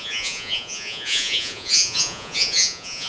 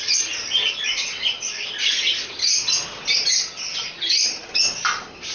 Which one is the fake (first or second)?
first